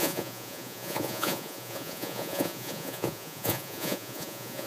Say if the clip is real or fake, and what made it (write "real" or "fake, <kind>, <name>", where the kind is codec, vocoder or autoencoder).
fake, vocoder, Vocos